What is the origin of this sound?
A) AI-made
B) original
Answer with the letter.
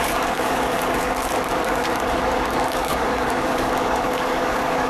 A